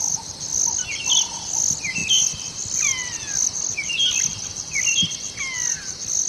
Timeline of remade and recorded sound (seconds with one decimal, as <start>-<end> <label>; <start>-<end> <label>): 0.0-6.3 recorded